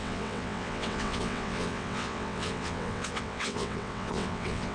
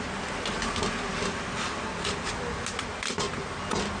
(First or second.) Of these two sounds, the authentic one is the second